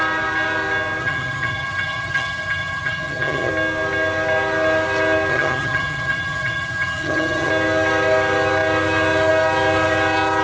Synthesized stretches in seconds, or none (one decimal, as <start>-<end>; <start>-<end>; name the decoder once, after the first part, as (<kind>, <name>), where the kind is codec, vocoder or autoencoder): 1.0-3.5 (vocoder, HiFi-GAN); 5.3-7.5